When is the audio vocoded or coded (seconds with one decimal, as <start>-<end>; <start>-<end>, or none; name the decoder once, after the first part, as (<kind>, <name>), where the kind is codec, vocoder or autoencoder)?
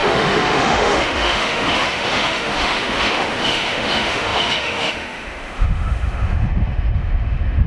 0.0-7.7 (autoencoder, DAC-VAE)